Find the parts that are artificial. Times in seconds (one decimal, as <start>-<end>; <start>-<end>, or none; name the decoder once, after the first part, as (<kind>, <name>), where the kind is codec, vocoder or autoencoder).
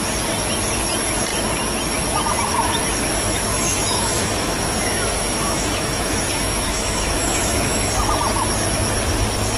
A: 3.5-7.9 (autoencoder, DAC-VAE)